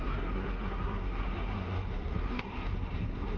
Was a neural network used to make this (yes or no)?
yes